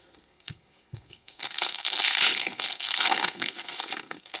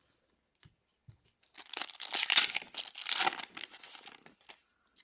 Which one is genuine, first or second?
second